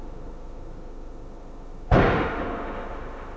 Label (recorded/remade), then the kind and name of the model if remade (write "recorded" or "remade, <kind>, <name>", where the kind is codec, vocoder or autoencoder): remade, autoencoder, DAC-VAE